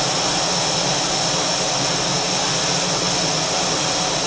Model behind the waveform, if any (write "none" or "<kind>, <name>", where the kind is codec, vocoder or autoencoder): none